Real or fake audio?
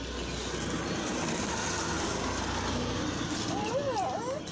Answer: real